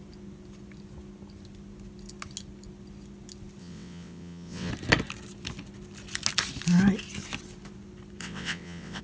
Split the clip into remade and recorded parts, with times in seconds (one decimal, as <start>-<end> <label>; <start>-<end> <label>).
0.0-3.6 recorded; 3.6-4.7 remade; 4.7-8.2 recorded; 8.2-9.0 remade